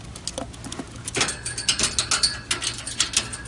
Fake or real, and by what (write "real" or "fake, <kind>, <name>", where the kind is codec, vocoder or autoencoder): real